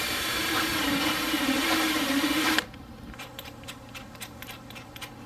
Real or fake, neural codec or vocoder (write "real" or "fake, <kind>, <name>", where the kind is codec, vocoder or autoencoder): fake, vocoder, BigVGAN v2